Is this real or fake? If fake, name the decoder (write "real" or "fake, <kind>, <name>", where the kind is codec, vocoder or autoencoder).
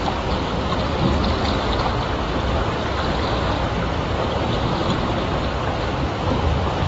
real